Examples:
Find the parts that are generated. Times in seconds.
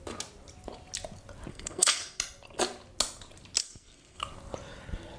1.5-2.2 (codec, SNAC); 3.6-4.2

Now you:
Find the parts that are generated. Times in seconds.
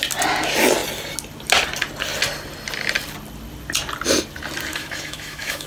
4.7-5.7 (autoencoder, DAC-VAE)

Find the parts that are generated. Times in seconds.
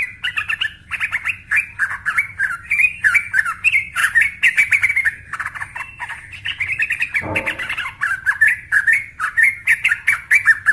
none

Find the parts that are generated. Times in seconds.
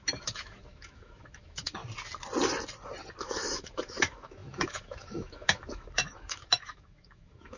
0.0-1.8 (autoencoder, DAC-VAE); 3.2-7.6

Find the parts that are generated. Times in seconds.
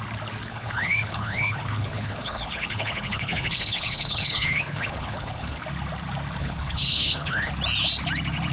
0.5-5.6 (codec, HILCodec); 6.4-7.5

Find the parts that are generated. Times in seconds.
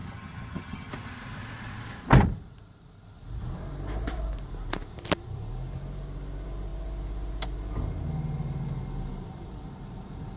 0.0-0.9 (vocoder, HiFi-GAN)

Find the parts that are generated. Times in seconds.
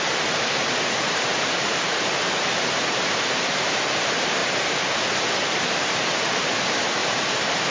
0.0-4.4 (vocoder, BigVGAN v2); 5.7-7.7